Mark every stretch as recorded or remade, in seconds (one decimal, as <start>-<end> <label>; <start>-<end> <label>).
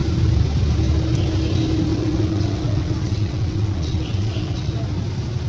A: 0.0-1.9 recorded; 1.9-4.7 remade; 4.7-5.5 recorded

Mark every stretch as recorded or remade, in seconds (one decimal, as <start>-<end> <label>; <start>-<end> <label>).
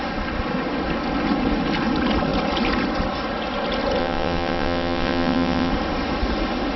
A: 0.0-4.0 recorded; 4.0-5.7 remade; 5.7-6.8 recorded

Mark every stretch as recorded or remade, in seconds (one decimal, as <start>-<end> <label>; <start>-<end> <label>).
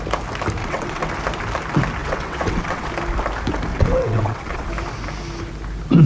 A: 0.0-0.6 recorded; 0.6-1.1 remade; 1.1-2.0 recorded; 2.0-2.9 remade; 2.9-3.7 recorded; 3.7-4.7 remade; 4.7-6.1 recorded